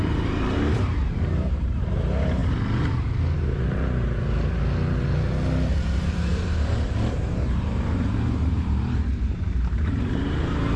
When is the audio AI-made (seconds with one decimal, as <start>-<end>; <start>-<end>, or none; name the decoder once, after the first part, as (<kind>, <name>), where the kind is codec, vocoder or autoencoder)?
0.0-2.4 (vocoder, BigVGAN v2); 5.8-10.8